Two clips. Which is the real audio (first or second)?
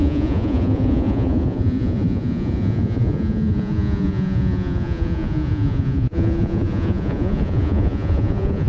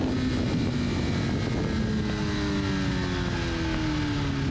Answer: second